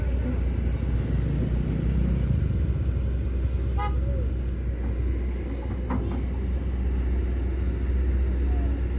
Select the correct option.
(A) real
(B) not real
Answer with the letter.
A